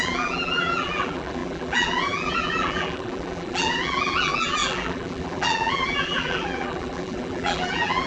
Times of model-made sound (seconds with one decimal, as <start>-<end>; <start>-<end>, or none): 0.0-8.1